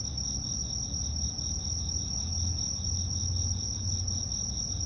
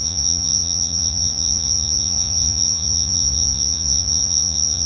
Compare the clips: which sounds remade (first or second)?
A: second